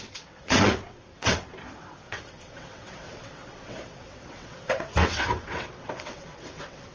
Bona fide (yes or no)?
no